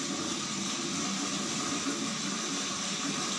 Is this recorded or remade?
recorded